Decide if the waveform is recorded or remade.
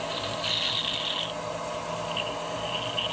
recorded